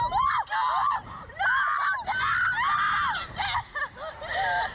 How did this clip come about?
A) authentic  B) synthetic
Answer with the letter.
A